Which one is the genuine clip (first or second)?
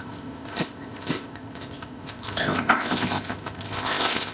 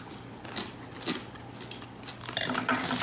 second